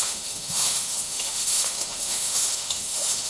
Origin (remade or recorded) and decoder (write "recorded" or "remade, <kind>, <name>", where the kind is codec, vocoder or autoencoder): remade, autoencoder, DAC-VAE